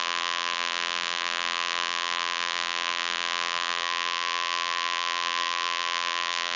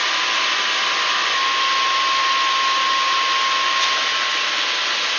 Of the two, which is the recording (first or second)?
second